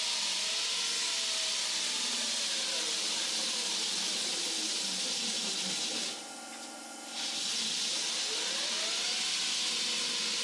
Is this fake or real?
real